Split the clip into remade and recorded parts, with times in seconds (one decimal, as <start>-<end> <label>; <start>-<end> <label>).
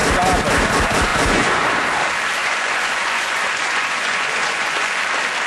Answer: 0.0-1.1 recorded; 1.1-1.7 remade; 1.7-2.4 recorded; 2.4-5.0 remade; 5.0-5.5 recorded